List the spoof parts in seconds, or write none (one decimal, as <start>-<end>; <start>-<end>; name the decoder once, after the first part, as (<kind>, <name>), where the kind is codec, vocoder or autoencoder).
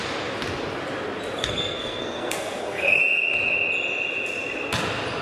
1.4-3.0 (codec, SNAC)